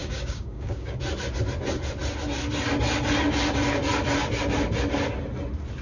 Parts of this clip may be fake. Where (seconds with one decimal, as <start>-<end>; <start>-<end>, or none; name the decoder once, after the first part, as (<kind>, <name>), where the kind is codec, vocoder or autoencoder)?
0.0-1.0 (codec, DAC)